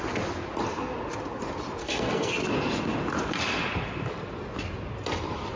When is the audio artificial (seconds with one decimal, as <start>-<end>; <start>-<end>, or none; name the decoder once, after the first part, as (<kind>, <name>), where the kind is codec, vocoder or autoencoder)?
1.8-2.3 (codec, SNAC)